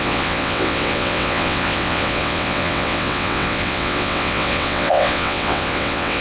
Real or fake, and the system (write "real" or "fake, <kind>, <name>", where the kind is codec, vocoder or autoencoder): fake, vocoder, WaveNeXt